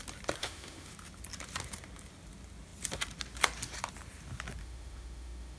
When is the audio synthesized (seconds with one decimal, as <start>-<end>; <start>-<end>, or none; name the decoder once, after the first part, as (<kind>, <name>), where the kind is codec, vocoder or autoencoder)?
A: 0.4-0.9 (autoencoder, DAC-VAE); 4.6-5.6